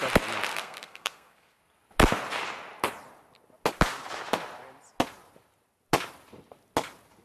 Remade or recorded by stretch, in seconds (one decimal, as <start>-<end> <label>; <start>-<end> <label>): 0.0-0.5 recorded; 0.5-1.6 remade; 1.6-7.2 recorded